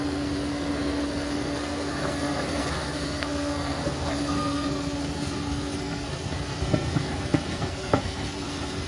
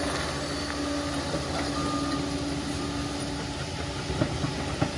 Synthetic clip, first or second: first